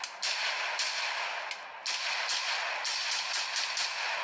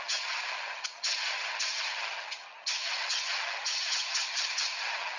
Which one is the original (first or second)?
first